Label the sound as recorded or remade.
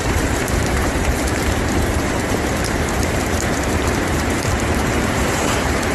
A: remade